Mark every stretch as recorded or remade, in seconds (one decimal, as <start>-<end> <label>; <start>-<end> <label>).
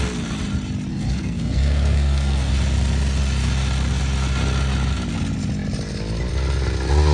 0.0-0.9 recorded; 0.9-2.5 remade; 2.5-7.1 recorded